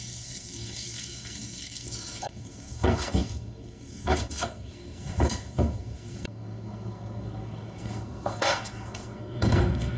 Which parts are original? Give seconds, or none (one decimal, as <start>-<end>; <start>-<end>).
none